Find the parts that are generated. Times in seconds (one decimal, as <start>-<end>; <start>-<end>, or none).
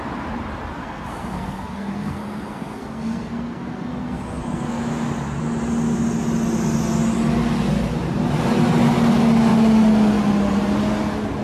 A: 0.8-4.8